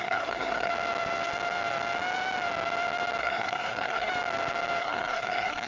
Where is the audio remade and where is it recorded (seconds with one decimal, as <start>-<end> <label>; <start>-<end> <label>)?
0.0-0.7 remade; 0.7-3.2 recorded; 3.2-4.1 remade; 4.1-4.8 recorded; 4.8-5.7 remade

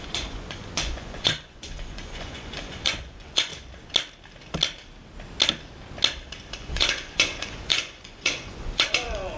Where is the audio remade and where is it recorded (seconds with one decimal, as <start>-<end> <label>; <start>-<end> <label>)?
0.0-3.5 remade; 3.5-6.5 recorded; 6.5-9.4 remade